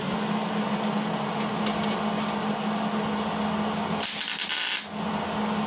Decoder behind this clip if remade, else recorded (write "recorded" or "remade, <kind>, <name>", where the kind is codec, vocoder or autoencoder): recorded